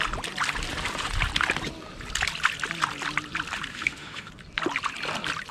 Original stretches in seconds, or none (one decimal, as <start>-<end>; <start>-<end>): 0.0-3.7; 4.3-5.5